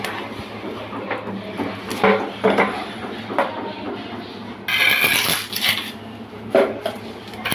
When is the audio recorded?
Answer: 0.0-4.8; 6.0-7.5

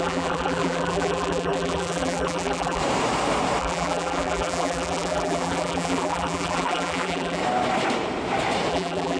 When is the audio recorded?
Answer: 2.8-3.6; 7.4-8.7

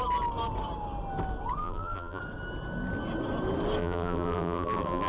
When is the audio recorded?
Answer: 0.0-1.6; 2.2-3.8

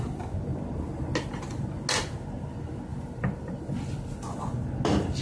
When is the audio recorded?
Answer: 0.0-2.9; 4.4-5.2